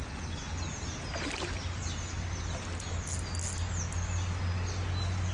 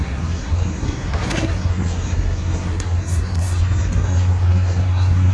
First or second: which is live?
first